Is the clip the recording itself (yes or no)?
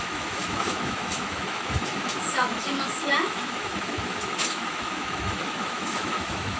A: no